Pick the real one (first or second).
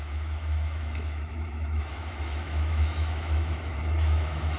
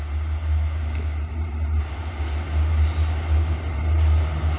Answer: second